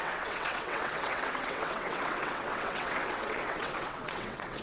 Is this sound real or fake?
fake